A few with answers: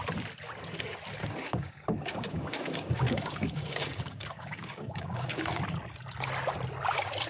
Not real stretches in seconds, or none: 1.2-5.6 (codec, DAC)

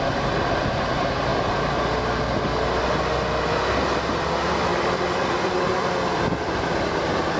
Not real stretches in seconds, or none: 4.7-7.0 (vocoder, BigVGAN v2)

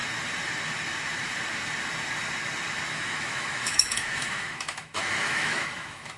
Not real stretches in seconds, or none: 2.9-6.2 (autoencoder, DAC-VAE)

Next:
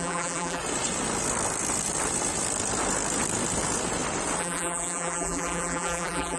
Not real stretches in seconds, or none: 0.0-0.6 (vocoder, BigVGAN v2); 4.4-6.4